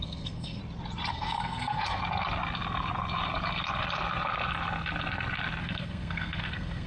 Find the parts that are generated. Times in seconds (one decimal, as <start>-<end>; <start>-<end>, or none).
0.0-0.6; 1.1-2.0; 5.6-6.9